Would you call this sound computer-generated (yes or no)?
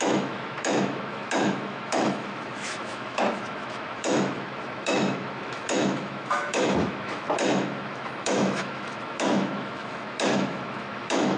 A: yes